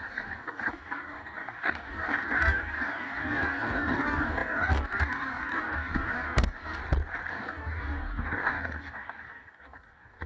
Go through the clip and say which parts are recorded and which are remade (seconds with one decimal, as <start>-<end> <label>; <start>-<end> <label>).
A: 0.0-6.8 remade; 6.8-7.3 recorded; 7.3-10.3 remade